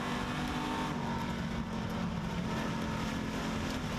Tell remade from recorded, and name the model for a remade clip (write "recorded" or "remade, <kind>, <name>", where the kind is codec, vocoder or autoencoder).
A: recorded